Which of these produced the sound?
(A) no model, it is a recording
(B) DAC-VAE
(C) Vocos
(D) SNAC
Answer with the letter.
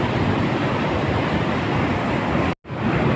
A